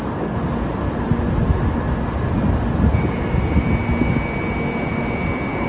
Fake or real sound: real